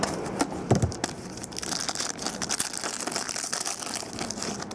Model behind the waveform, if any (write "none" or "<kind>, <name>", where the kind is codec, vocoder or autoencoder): none